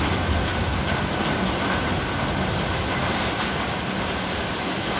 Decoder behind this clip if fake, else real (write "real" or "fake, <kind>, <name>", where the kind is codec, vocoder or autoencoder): real